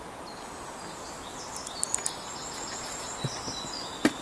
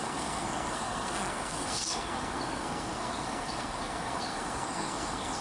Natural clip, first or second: first